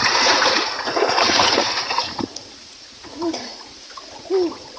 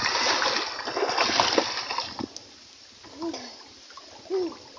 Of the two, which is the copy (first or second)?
first